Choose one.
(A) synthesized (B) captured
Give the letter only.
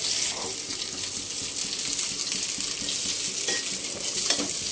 B